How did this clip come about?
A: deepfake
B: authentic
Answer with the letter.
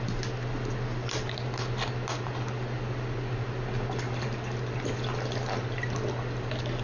B